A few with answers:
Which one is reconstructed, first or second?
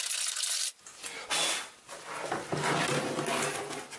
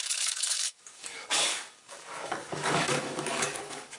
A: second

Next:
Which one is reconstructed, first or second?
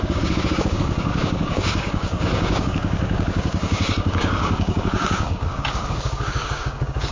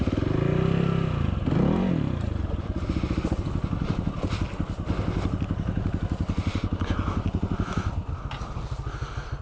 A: first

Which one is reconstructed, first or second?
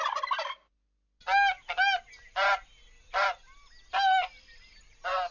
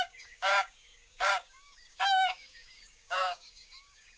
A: second